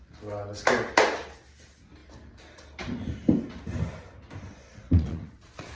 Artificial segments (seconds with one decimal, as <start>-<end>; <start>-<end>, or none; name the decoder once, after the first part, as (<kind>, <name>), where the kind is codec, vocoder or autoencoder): 4.5-5.7 (vocoder, Vocos)